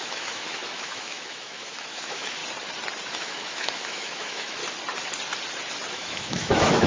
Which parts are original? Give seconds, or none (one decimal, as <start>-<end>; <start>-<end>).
2.4-3.1; 4.6-5.9